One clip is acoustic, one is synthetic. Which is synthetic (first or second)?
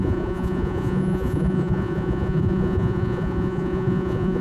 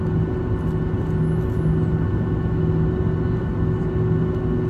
first